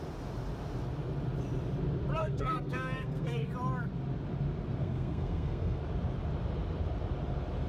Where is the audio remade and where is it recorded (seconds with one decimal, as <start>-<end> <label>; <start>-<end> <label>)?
0.0-2.2 recorded; 2.2-3.5 remade; 3.5-4.8 recorded; 4.8-5.8 remade; 5.8-7.7 recorded